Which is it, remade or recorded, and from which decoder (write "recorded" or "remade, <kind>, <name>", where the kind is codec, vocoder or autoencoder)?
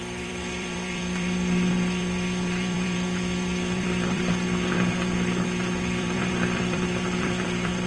remade, vocoder, BigVGAN v2